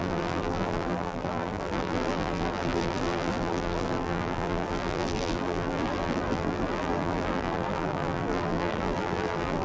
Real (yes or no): no